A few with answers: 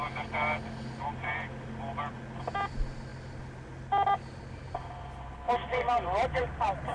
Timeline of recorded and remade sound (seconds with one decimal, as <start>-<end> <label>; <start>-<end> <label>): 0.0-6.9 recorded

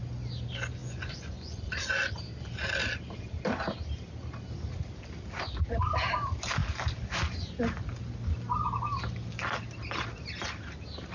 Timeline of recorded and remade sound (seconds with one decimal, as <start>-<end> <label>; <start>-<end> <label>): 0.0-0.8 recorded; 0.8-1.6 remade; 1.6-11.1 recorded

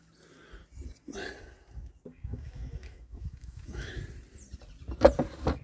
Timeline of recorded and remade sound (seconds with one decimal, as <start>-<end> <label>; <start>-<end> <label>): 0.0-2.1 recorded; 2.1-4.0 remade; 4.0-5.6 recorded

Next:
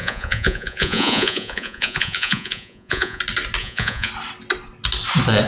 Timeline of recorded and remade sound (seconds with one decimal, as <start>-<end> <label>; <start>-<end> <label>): 0.0-3.2 remade; 3.2-3.6 recorded; 3.6-4.1 remade; 4.1-5.5 recorded

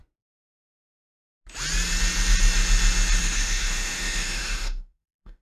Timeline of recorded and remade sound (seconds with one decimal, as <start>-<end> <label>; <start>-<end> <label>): 0.0-3.2 recorded; 3.2-5.4 remade

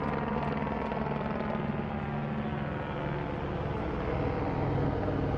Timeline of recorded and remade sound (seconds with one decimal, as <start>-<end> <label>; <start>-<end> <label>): 0.0-5.4 recorded